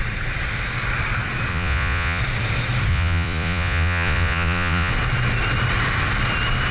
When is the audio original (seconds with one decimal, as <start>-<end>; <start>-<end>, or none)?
0.0-1.5; 2.2-2.9; 4.9-6.7